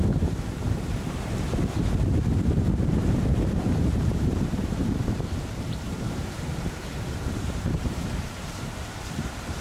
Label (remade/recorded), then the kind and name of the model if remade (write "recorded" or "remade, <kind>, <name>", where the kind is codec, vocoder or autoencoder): remade, vocoder, BigVGAN v2